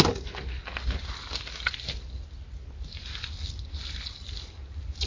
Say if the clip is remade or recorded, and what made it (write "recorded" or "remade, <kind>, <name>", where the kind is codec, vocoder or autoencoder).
recorded